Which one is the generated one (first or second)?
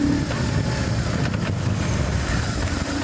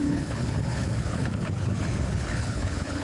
second